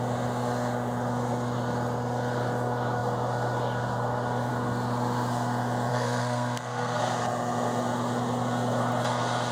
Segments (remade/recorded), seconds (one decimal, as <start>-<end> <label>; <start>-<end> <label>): 0.0-5.9 recorded; 5.9-7.0 remade; 7.0-9.5 recorded